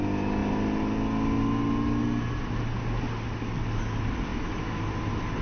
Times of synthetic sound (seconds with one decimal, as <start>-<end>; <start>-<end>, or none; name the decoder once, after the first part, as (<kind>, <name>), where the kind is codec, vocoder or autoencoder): 4.3-4.8 (autoencoder, DAC-VAE)